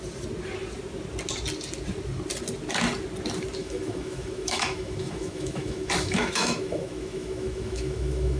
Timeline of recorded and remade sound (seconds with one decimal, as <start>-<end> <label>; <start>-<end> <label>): 0.0-3.6 recorded; 3.6-8.4 remade